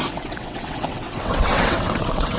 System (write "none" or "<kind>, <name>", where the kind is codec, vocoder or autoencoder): vocoder, WaveNeXt